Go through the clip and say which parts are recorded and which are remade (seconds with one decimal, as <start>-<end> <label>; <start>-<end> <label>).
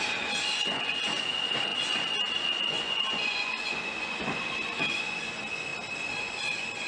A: 0.0-5.7 remade; 5.7-6.2 recorded; 6.2-6.9 remade